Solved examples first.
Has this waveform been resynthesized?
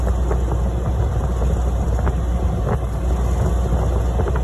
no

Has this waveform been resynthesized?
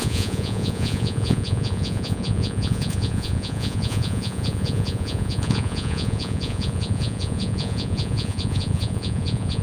yes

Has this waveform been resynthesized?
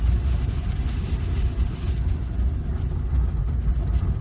no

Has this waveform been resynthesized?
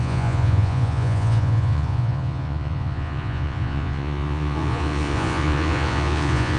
yes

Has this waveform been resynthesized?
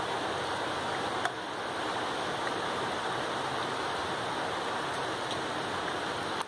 no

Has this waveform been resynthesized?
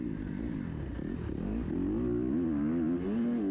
no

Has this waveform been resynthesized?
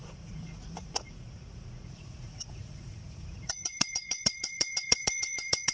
yes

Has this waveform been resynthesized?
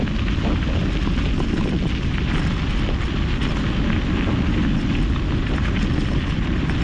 no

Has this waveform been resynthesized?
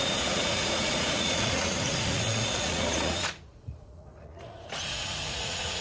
yes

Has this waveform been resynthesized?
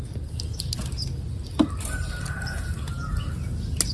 no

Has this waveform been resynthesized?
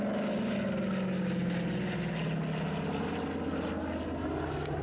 no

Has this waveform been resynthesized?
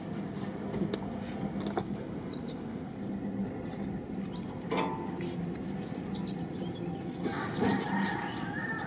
no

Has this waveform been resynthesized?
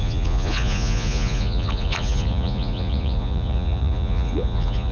yes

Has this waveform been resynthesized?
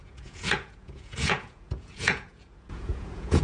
yes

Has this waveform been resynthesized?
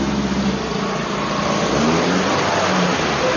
no